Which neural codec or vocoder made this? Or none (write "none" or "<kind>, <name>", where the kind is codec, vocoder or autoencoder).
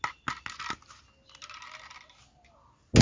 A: none